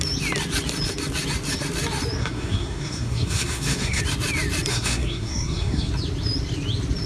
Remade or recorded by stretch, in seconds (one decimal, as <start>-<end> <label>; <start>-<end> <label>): 0.0-2.2 recorded; 2.2-4.0 remade; 4.0-4.7 recorded; 4.7-5.9 remade; 5.9-7.1 recorded